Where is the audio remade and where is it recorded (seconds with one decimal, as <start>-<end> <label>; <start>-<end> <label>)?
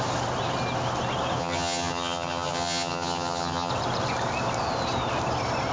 0.0-1.4 recorded; 1.4-3.7 remade; 3.7-5.7 recorded